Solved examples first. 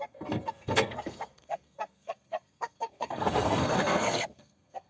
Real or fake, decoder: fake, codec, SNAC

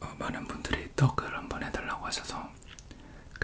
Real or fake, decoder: real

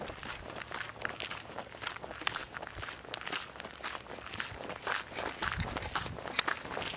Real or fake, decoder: real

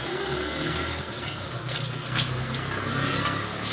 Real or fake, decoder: fake, codec, SNAC